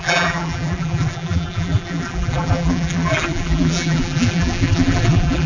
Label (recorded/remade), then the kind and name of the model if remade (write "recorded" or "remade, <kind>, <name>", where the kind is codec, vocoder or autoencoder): remade, vocoder, BigVGAN v2